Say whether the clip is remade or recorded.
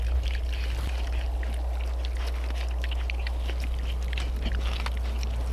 recorded